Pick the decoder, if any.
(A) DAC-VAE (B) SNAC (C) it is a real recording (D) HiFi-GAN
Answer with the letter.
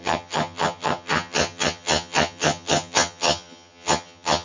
D